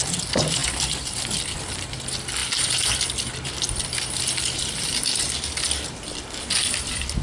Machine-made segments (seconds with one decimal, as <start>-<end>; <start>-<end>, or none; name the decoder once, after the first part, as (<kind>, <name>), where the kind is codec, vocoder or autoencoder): none